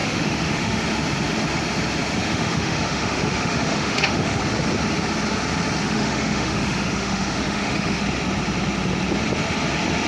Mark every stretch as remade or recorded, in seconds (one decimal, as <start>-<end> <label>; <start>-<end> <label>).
0.0-0.8 remade; 0.8-2.2 recorded; 2.2-4.4 remade; 4.4-5.8 recorded; 5.8-8.0 remade; 8.0-10.1 recorded